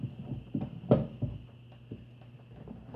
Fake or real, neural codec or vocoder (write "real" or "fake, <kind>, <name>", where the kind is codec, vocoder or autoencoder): real